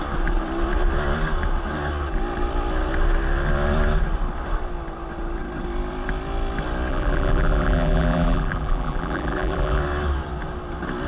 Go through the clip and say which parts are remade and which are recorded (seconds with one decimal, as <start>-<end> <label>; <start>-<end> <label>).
0.0-6.9 recorded; 6.9-9.8 remade; 9.8-11.1 recorded

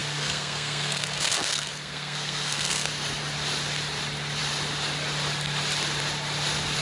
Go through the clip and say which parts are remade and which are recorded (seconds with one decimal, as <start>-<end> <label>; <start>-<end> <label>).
0.0-2.9 remade; 2.9-6.8 recorded

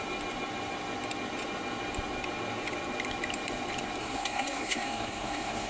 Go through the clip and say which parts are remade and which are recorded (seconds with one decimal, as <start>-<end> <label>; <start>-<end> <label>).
0.0-4.0 recorded; 4.0-5.7 remade

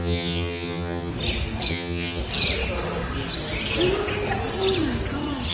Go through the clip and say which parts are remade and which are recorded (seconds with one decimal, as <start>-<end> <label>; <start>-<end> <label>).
0.0-1.1 remade; 1.1-1.7 recorded; 1.7-2.2 remade; 2.2-5.5 recorded

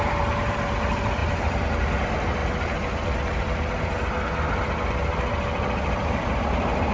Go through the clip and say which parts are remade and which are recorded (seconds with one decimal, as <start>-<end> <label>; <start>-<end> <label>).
0.0-6.9 recorded